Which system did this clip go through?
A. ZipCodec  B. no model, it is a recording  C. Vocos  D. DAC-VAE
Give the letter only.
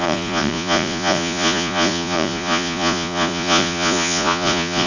C